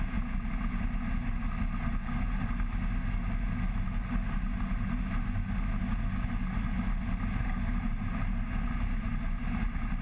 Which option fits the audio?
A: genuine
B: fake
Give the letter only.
A